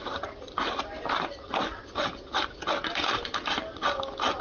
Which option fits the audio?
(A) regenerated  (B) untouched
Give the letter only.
B